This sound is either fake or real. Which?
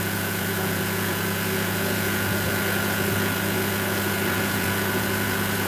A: fake